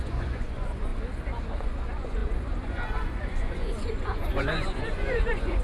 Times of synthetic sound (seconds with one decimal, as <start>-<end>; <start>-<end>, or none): 0.0-0.9; 1.6-5.6